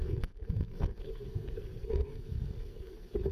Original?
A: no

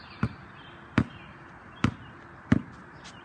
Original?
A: yes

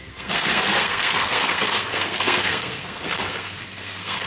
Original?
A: no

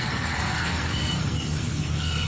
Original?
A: no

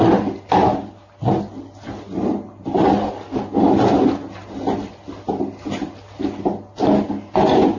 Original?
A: yes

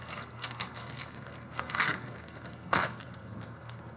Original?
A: no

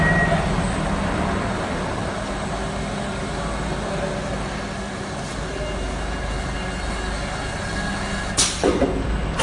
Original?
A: yes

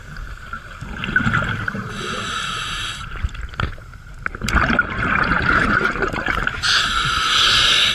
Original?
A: yes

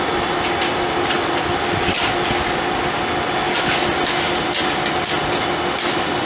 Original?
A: yes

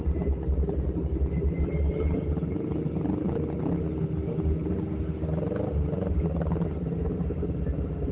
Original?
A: yes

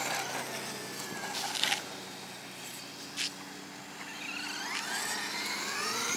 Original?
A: yes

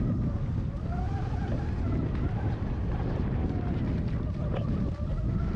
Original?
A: yes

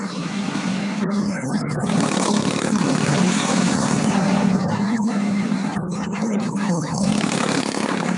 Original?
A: no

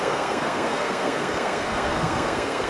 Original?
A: no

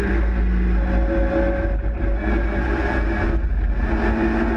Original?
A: yes